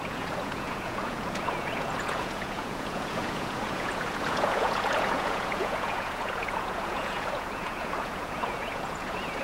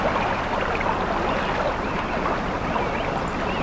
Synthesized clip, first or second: first